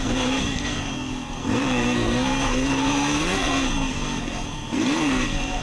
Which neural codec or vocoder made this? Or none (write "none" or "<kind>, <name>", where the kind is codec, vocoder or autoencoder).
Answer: codec, SNAC